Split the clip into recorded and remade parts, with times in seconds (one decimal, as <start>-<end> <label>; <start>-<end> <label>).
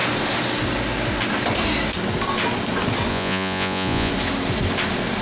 0.0-3.1 recorded; 3.1-4.1 remade; 4.1-5.2 recorded